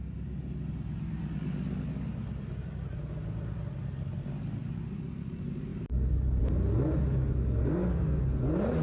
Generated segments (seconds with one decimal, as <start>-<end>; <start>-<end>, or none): 7.6-8.2